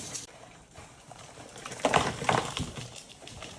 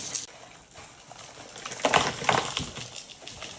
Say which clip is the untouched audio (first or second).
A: second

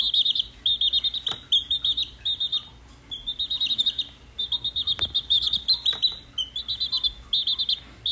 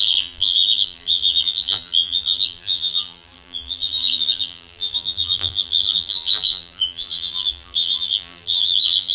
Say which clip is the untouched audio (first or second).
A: first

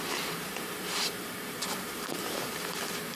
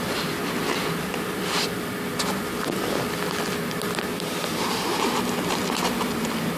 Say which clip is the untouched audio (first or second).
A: second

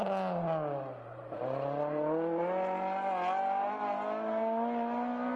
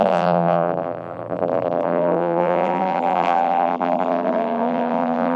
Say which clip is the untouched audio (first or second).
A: first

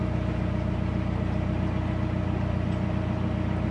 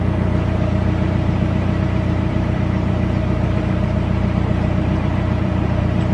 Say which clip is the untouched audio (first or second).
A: first